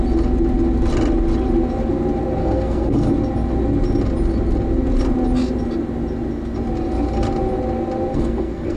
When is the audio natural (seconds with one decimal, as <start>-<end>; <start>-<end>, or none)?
0.0-2.4; 3.1-8.1